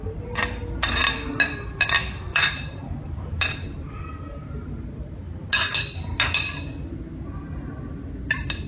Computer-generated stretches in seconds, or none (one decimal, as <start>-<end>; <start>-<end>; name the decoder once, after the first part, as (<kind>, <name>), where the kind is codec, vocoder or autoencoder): 2.3-3.4 (vocoder, BigVGAN v2)

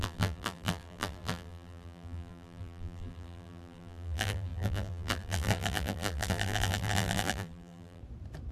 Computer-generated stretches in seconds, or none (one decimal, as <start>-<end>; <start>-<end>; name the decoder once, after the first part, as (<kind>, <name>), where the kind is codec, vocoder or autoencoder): 0.0-8.0 (vocoder, BigVGAN v2)

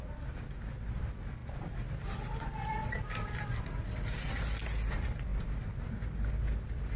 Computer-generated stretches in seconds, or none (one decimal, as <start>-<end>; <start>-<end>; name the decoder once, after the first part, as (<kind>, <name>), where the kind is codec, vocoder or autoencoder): 1.4-3.6 (vocoder, BigVGAN v2)

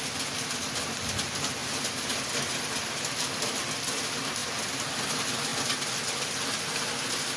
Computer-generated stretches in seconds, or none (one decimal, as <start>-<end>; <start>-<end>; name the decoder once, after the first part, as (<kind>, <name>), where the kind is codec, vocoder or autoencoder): 1.6-2.2 (vocoder, BigVGAN v2)

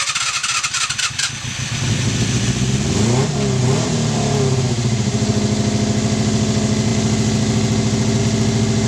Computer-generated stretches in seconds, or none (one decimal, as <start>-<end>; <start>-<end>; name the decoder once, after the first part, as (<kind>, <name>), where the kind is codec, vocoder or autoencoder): 3.6-5.3 (vocoder, BigVGAN v2)

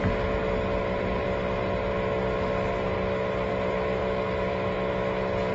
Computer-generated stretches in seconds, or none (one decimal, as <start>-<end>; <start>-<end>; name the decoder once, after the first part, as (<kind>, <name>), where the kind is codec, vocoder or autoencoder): none

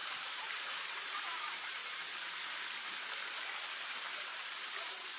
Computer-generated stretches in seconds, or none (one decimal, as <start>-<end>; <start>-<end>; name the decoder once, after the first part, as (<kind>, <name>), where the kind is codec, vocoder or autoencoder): 0.0-1.8 (vocoder, BigVGAN v2); 3.9-4.3; 4.8-5.2